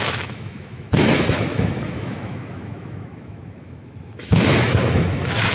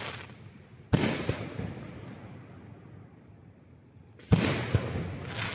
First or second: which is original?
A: second